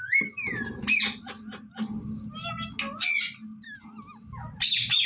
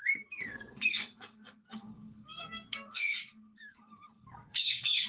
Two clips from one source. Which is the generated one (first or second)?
second